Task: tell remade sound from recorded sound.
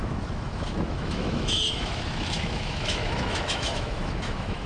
remade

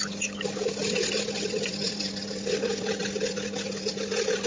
recorded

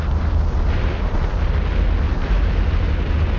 recorded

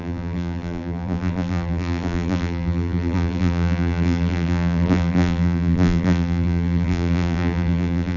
remade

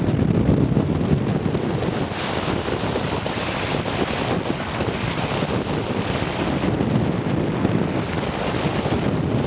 recorded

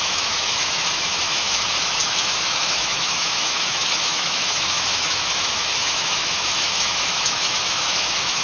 remade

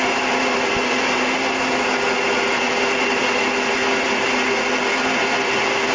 recorded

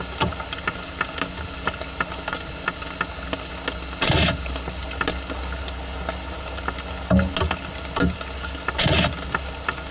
recorded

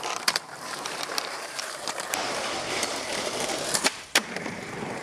remade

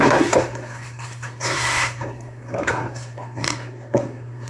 remade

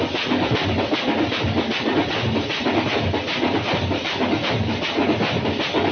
recorded